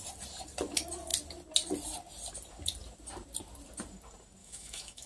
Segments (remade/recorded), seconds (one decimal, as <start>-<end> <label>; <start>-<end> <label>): 0.0-4.4 recorded; 4.4-5.1 remade